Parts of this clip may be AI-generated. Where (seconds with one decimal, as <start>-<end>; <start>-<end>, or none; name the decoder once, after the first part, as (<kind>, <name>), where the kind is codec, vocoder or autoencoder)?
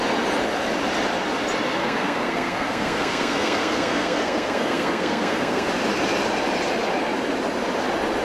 1.8-5.7 (codec, SNAC)